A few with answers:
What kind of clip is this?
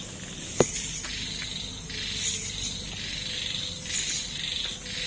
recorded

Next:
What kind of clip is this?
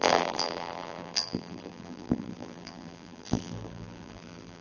remade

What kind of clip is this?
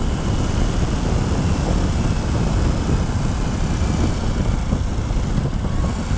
recorded